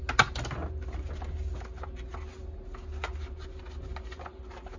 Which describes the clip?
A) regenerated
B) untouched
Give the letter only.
B